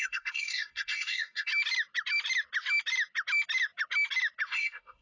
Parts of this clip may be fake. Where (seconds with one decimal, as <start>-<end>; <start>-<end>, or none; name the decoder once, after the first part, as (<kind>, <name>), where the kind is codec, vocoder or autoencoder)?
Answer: 0.0-1.5 (codec, SNAC); 4.5-5.0